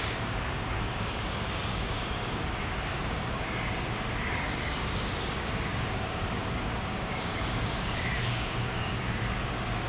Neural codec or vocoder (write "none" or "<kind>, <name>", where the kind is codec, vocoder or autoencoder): codec, DAC